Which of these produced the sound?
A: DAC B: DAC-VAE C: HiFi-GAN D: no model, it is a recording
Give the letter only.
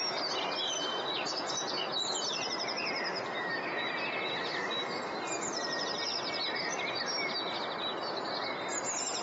D